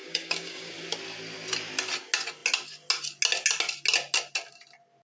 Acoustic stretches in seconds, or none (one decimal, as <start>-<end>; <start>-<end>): 0.7-5.0